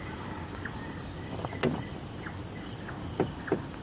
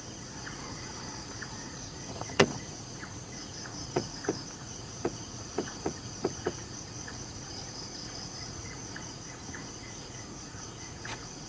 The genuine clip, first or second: first